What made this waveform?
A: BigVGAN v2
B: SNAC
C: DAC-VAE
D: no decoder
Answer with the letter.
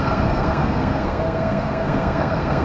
B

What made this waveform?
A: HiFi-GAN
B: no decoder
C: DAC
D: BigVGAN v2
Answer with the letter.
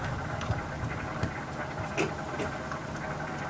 B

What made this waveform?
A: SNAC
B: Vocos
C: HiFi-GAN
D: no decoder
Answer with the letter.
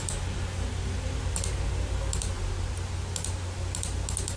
D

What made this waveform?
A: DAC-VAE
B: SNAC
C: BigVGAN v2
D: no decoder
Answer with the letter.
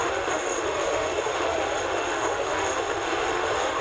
A